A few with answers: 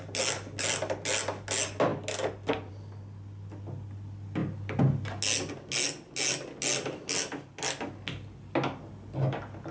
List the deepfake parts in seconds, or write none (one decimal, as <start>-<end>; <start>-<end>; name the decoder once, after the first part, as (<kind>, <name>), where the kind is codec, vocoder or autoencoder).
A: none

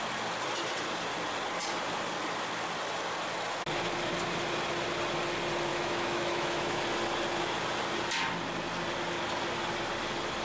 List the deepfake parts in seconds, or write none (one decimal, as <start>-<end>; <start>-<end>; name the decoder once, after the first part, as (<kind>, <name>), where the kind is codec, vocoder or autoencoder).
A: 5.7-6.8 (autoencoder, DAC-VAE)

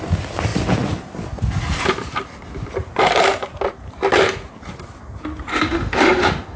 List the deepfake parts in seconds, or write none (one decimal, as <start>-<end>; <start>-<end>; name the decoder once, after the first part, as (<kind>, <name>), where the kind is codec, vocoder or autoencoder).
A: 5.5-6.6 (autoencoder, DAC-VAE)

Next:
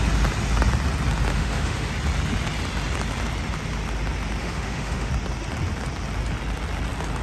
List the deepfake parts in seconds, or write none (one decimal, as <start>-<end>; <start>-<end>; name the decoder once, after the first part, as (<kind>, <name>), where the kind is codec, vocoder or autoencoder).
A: 1.3-1.9 (autoencoder, DAC-VAE); 4.4-5.1